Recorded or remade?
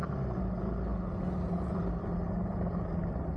recorded